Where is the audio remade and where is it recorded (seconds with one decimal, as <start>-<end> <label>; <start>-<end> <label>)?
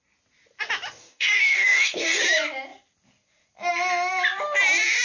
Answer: 0.0-1.0 recorded; 1.0-2.2 remade; 2.2-5.0 recorded